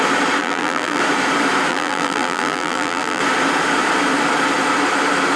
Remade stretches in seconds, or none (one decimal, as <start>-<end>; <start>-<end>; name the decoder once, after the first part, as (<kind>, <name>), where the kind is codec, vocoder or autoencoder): 0.4-1.0 (vocoder, BigVGAN v2); 1.7-3.2